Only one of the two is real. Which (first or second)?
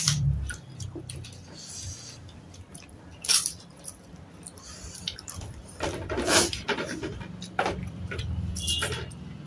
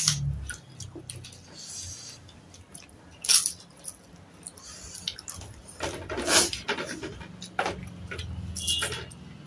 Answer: second